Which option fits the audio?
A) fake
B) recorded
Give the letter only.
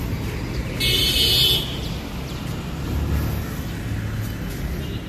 B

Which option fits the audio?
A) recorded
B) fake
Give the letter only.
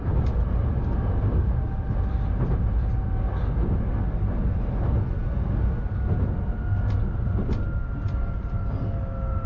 A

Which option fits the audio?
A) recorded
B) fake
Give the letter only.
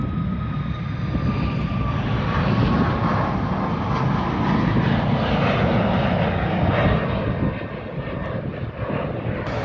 A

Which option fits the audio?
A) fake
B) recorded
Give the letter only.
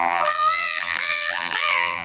A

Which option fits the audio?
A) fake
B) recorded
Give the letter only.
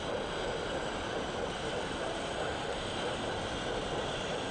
A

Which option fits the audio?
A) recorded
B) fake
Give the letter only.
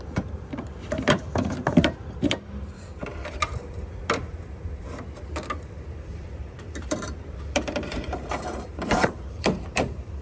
B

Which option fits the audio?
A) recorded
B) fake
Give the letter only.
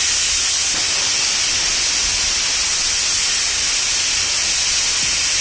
A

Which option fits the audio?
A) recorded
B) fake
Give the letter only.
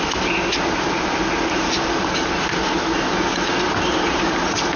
A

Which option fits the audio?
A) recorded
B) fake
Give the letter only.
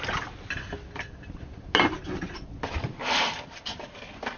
A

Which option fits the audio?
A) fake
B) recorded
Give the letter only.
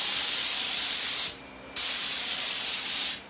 A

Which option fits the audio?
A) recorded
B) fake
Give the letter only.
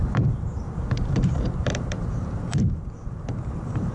B